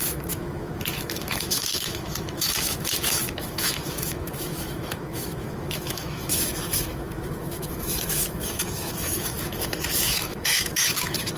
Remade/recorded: remade